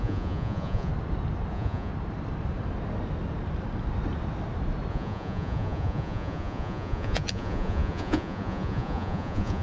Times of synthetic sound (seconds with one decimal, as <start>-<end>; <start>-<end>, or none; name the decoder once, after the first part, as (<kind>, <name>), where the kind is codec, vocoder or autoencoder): 0.0-0.9 (vocoder, Vocos); 1.5-1.9; 4.9-9.6